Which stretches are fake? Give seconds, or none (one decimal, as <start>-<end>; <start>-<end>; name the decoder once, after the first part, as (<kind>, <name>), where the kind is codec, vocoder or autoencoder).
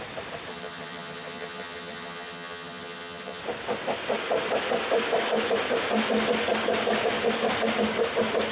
0.5-3.4 (vocoder, HiFi-GAN)